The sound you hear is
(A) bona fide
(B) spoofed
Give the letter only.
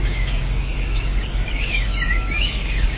B